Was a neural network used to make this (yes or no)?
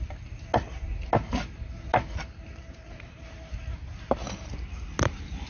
no